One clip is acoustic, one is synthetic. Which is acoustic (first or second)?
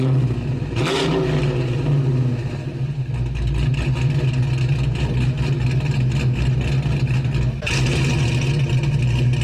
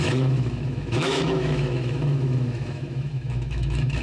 first